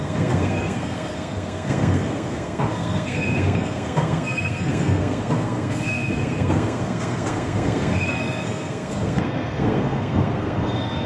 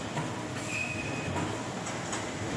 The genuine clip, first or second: second